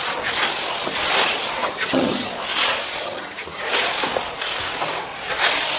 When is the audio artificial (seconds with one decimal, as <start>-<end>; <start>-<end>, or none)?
1.6-2.3; 3.0-3.6